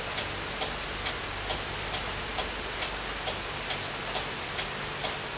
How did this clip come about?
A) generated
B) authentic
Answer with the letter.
B